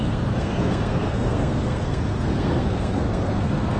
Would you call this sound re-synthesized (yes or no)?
yes